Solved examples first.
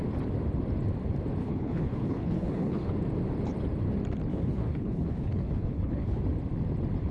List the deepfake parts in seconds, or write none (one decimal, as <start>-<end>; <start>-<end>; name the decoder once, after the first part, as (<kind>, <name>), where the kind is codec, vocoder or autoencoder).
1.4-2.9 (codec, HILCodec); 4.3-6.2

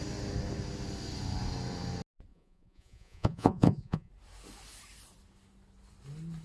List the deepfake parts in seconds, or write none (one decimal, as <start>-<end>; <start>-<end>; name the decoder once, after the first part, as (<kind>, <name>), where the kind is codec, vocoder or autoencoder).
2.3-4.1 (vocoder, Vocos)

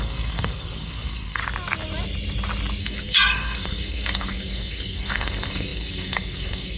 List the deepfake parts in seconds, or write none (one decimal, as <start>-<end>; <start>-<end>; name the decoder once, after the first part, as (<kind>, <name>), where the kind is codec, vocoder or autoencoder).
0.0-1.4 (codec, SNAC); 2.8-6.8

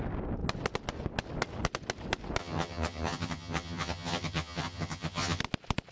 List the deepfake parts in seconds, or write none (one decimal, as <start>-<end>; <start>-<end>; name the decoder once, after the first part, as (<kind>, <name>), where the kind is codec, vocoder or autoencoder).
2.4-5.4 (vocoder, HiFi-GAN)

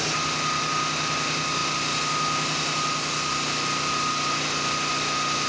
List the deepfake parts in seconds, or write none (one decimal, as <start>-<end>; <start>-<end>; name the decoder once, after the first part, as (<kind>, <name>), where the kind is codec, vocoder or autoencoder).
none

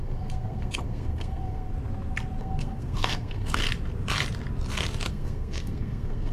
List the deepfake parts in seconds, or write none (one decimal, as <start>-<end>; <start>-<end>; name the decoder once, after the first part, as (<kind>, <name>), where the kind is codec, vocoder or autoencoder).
0.0-1.7 (codec, SNAC); 2.4-3.6; 5.1-6.3

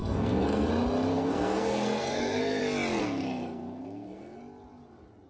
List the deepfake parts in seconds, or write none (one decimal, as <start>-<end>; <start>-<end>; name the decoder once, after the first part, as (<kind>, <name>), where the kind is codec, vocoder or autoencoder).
0.0-0.7 (codec, SNAC); 1.1-2.6; 3.0-4.4

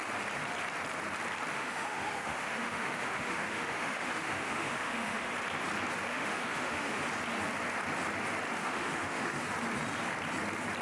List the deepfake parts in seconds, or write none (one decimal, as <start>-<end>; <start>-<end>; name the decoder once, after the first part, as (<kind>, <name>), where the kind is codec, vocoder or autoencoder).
1.5-5.3 (autoencoder, DAC-VAE); 6.1-7.0; 8.6-9.4